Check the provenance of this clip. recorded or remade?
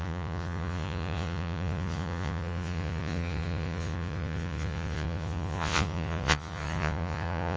remade